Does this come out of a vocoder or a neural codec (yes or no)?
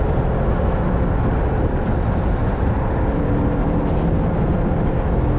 no